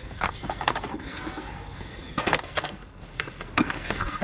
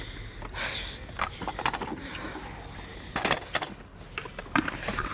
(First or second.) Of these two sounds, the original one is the second